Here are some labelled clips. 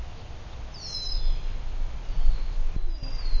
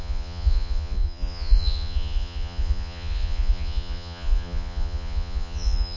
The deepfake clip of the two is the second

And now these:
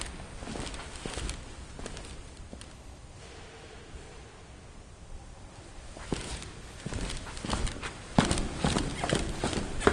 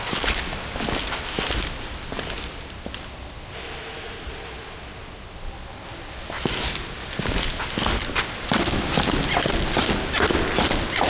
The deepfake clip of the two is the first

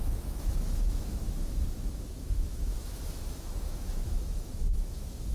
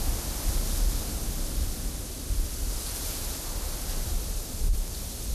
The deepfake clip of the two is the first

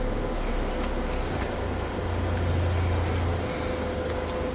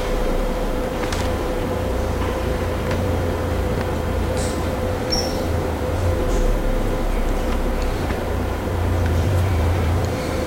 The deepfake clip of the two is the second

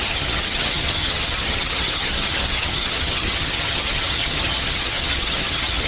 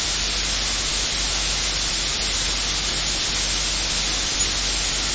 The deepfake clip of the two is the first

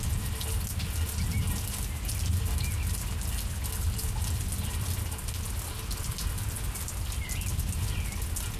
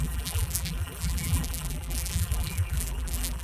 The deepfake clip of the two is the second